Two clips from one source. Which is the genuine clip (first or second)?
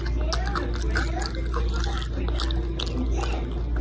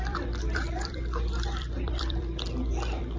first